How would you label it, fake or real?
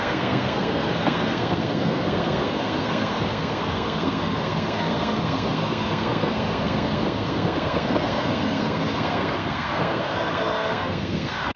fake